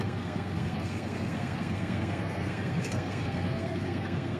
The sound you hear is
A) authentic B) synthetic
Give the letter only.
B